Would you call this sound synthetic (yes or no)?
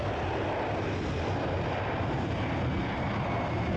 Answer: no